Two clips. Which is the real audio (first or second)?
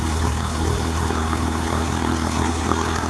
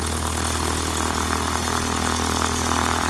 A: second